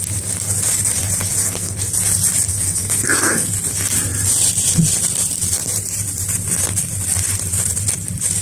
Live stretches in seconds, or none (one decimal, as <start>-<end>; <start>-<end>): 0.0-1.4; 1.9-2.5; 3.5-8.4